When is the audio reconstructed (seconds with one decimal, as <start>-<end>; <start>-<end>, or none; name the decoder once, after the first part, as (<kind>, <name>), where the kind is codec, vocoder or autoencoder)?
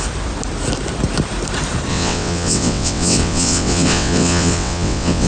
1.9-5.3 (vocoder, WaveNeXt)